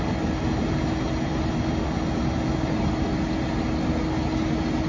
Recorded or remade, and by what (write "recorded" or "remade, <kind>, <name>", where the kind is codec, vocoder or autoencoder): recorded